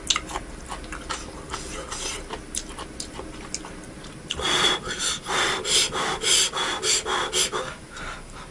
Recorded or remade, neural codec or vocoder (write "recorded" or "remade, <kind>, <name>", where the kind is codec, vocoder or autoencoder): recorded